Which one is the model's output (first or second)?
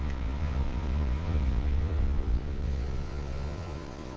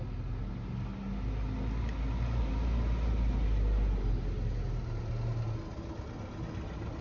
first